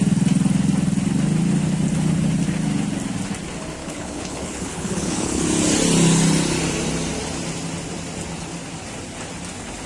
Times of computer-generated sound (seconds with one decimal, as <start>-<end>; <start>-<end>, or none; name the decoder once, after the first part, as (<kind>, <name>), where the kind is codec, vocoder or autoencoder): 3.8-5.4 (codec, HILCodec)